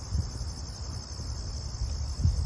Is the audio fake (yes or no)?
no